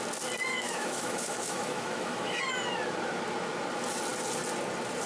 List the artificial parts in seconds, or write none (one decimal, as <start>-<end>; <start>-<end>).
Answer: 0.5-2.4